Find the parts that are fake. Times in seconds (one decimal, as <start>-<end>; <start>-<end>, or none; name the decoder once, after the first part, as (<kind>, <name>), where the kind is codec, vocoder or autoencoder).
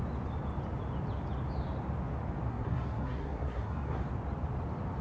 2.5-4.0 (codec, SNAC)